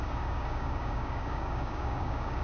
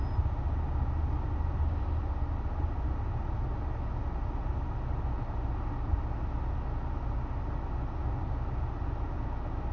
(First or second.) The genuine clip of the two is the second